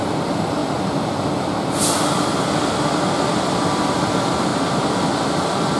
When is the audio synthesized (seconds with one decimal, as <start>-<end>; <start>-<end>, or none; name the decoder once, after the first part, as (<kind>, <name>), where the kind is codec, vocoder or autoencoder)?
0.0-0.6 (vocoder, BigVGAN v2); 1.6-4.5; 5.2-5.8